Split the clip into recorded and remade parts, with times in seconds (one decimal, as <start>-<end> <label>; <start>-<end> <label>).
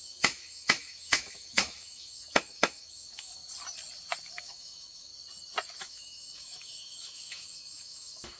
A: 0.0-3.4 remade; 3.4-4.4 recorded; 4.4-5.1 remade; 5.1-5.8 recorded; 5.8-8.4 remade